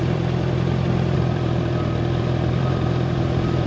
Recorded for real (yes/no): no